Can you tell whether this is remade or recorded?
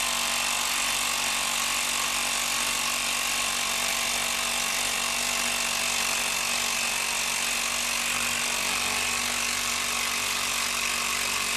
recorded